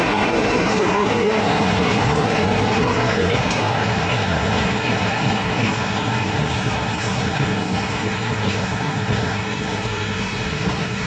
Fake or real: fake